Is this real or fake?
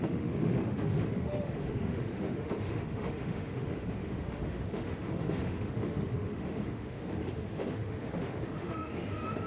fake